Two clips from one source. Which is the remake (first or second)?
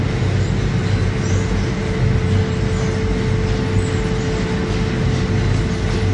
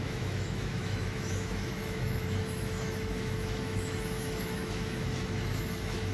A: second